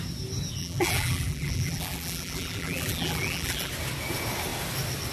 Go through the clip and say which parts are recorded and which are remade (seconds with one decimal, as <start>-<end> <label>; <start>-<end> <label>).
0.0-0.6 recorded; 0.6-3.7 remade; 3.7-5.1 recorded